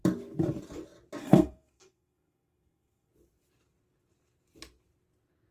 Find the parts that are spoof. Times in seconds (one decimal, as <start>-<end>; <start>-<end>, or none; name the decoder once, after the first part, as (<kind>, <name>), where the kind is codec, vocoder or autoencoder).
1.2-3.1 (codec, SNAC)